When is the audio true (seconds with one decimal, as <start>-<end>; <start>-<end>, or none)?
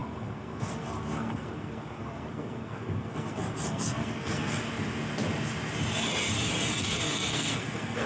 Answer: 4.6-6.8